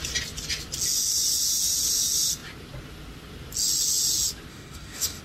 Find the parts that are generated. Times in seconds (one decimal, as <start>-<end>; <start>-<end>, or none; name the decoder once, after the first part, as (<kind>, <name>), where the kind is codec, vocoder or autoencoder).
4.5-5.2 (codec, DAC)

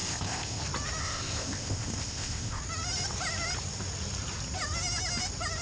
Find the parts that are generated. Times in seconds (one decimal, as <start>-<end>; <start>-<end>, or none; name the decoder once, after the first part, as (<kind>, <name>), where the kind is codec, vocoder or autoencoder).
0.0-0.6 (codec, ZipCodec); 1.0-2.6

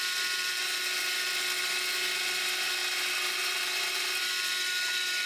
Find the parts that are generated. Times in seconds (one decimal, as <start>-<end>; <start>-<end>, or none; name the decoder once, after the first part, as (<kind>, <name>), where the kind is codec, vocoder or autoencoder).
none

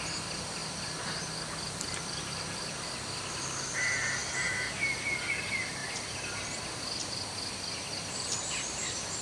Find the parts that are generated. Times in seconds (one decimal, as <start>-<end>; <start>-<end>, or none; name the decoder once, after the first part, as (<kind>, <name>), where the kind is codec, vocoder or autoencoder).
none

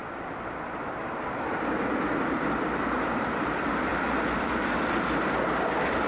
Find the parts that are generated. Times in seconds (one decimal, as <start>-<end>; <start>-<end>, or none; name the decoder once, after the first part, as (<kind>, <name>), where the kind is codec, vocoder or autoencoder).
0.0-1.6 (vocoder, BigVGAN v2)

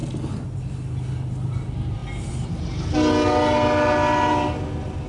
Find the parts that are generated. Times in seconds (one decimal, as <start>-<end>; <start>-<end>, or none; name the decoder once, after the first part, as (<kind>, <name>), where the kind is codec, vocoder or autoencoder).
none